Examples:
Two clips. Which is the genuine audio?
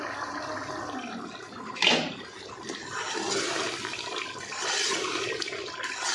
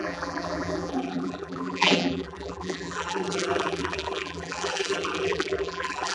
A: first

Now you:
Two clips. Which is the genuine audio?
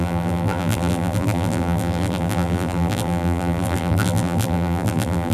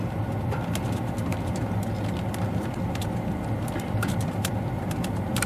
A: second